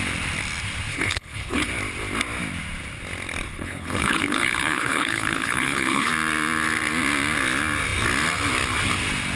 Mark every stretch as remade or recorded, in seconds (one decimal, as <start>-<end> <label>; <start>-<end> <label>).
0.0-0.9 recorded; 0.9-1.7 remade; 1.7-3.5 recorded; 3.5-6.1 remade; 6.1-9.4 recorded